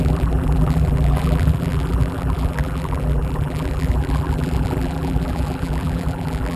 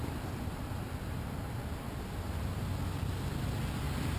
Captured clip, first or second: second